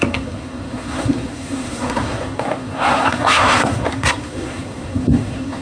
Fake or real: fake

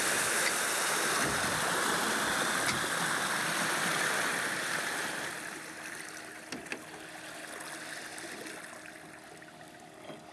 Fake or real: real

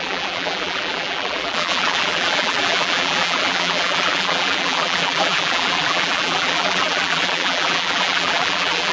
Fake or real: fake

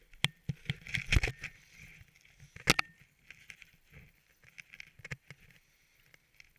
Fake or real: real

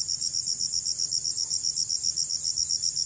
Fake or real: real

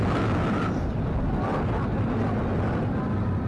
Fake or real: real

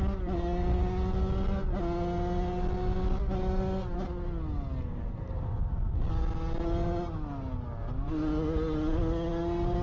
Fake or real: real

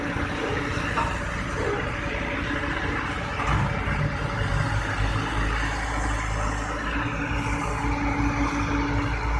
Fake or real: real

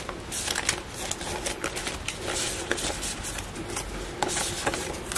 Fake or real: real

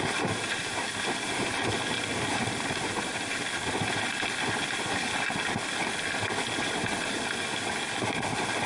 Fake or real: real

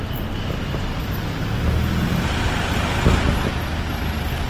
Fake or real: real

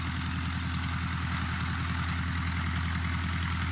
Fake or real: real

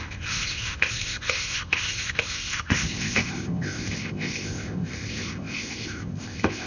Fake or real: fake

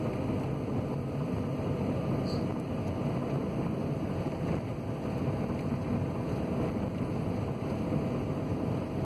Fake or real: real